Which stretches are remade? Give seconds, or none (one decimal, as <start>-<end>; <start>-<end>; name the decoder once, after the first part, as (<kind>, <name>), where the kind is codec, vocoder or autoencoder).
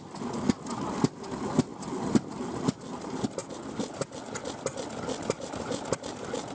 none